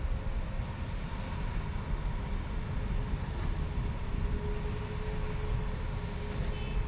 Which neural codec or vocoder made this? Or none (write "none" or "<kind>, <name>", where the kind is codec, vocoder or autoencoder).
none